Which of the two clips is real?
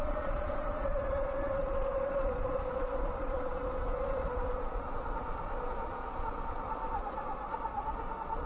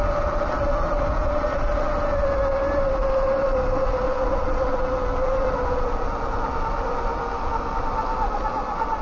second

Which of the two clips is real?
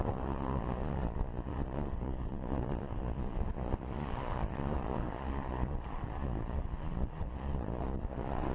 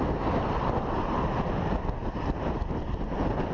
second